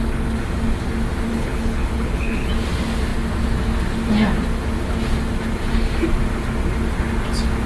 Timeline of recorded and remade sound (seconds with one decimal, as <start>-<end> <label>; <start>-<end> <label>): 0.0-1.3 recorded; 1.3-2.5 remade; 2.5-7.7 recorded